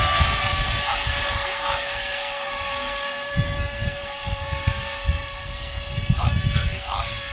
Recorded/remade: remade